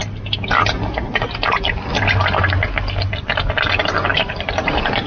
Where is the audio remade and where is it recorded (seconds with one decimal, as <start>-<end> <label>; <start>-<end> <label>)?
0.0-4.1 recorded; 4.1-5.1 remade